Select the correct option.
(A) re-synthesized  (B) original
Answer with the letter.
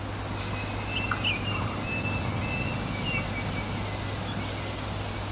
B